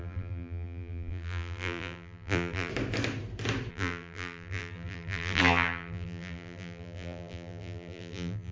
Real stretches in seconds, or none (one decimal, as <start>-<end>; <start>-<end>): 2.7-3.7

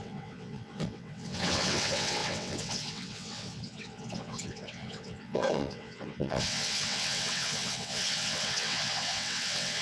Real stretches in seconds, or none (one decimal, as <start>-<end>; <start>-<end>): none

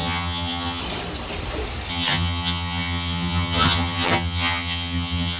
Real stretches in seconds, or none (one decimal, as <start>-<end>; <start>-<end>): 0.8-1.9

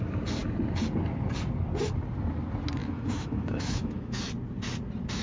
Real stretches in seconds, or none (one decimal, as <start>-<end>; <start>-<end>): 0.0-2.8; 4.2-5.2

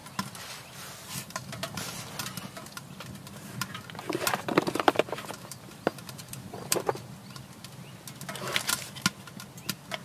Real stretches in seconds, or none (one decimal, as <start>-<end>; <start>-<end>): 1.8-2.2; 6.9-10.0

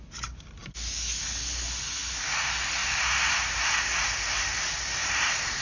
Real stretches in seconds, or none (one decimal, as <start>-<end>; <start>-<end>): 0.0-2.8; 3.6-5.0

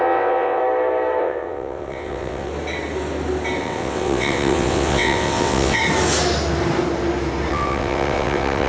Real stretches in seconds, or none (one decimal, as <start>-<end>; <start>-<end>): 0.6-1.2; 2.5-3.6; 5.8-7.5

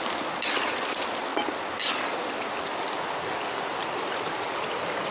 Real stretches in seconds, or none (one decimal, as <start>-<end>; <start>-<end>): 0.0-5.1